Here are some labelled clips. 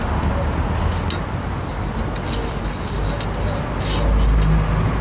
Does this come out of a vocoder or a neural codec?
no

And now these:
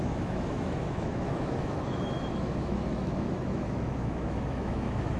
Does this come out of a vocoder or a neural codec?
yes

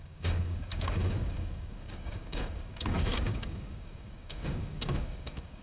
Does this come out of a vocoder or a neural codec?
yes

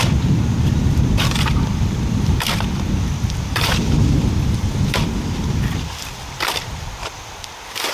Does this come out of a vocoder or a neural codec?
yes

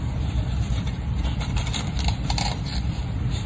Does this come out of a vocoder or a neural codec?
yes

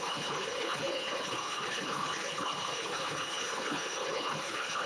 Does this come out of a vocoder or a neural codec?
yes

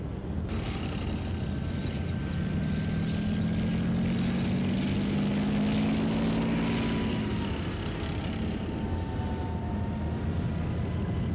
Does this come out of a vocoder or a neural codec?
no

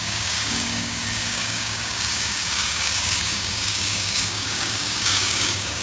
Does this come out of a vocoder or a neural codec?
yes